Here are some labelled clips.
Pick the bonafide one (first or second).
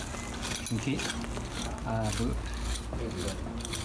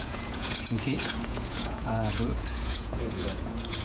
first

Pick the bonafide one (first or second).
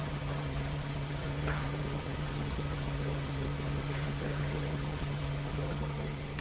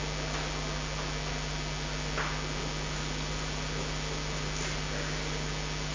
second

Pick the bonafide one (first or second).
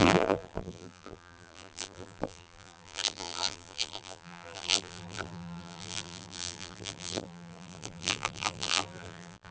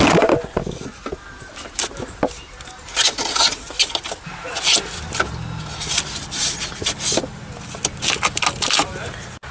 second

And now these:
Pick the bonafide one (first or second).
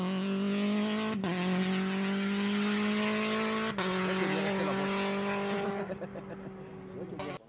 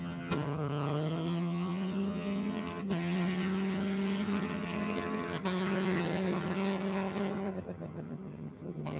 first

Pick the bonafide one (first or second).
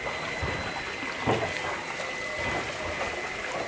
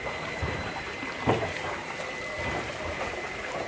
first